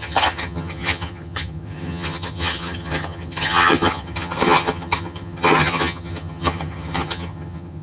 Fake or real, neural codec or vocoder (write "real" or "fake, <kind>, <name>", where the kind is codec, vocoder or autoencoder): fake, vocoder, HiFi-GAN